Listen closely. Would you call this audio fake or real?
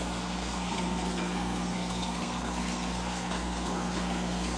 fake